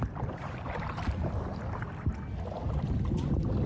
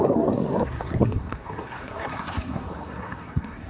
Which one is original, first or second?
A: first